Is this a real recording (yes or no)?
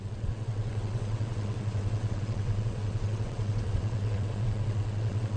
no